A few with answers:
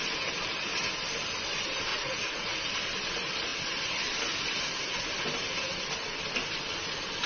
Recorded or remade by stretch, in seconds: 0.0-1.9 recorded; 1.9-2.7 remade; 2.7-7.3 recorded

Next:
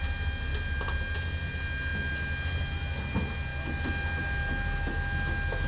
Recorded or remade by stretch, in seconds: 0.0-5.7 recorded

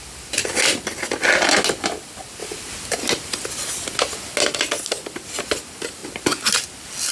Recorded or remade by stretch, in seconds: 0.0-7.1 recorded